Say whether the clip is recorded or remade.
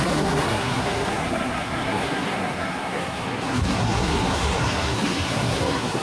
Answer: remade